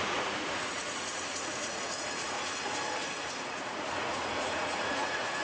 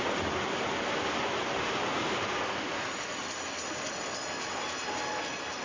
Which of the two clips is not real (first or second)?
first